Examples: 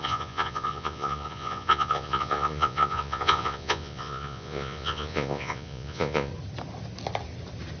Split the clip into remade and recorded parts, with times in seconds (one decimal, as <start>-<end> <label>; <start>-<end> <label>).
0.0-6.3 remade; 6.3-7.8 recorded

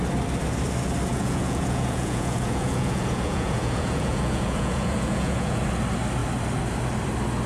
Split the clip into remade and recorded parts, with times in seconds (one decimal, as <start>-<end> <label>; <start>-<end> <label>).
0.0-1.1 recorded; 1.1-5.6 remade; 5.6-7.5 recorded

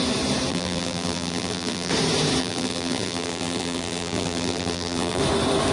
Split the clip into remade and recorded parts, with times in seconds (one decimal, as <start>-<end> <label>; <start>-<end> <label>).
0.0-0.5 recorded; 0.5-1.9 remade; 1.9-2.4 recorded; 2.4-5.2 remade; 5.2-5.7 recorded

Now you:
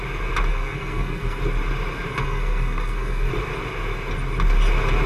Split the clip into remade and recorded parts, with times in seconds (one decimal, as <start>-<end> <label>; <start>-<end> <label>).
0.0-0.5 recorded; 0.5-1.4 remade; 1.4-2.1 recorded; 2.1-3.3 remade; 3.3-5.1 recorded

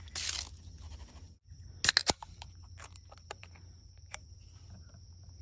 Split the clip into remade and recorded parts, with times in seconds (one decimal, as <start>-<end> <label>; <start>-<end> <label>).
0.0-2.0 recorded; 2.0-4.3 remade; 4.3-5.4 recorded